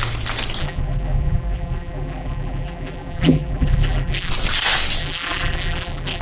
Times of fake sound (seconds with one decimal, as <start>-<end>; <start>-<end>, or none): 0.6-4.3; 5.0-6.2